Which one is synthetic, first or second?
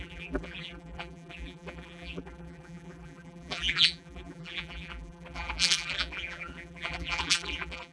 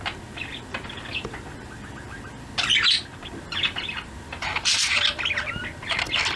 first